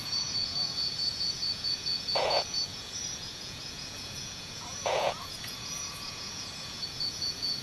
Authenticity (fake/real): fake